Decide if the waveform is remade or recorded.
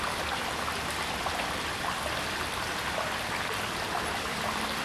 recorded